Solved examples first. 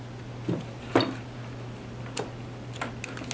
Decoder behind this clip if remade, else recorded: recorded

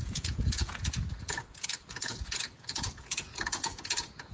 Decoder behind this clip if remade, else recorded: remade, vocoder, Vocos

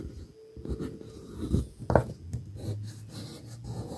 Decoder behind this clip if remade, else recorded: recorded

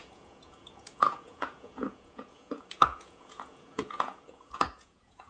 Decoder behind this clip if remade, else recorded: remade, vocoder, Vocos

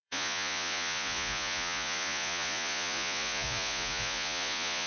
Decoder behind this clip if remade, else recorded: remade, vocoder, Vocos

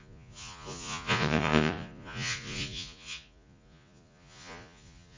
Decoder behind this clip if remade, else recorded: remade, vocoder, Vocos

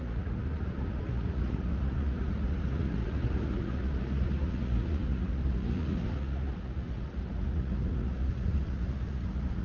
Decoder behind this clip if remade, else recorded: remade, vocoder, Vocos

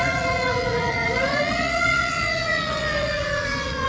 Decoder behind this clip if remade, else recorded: remade, vocoder, Vocos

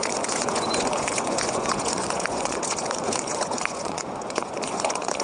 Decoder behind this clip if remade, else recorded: remade, vocoder, Vocos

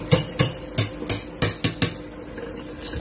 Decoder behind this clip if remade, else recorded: recorded